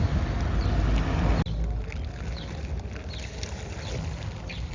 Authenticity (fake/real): real